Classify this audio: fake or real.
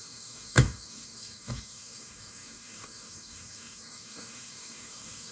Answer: fake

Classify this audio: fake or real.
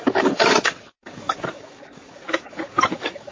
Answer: fake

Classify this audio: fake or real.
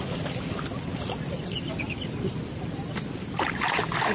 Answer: real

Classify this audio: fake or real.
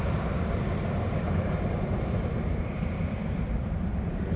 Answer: fake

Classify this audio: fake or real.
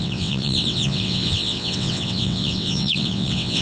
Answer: fake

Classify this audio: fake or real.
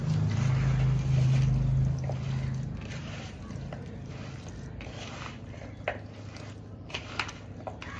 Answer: real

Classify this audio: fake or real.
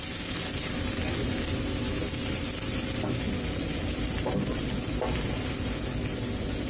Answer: real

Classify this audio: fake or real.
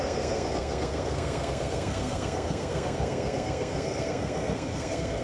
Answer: fake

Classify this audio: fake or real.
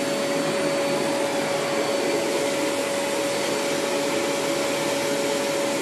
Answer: real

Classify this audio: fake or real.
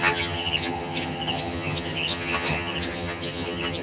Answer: fake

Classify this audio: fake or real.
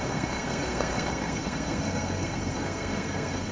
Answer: fake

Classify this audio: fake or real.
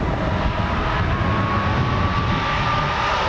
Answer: real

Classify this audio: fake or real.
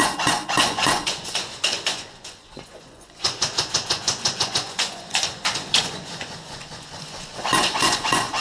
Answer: fake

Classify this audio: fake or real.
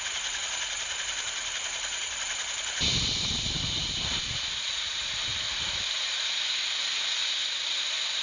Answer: fake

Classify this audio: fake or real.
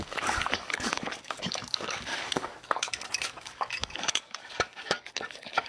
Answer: fake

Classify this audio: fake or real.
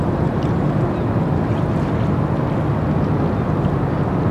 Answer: real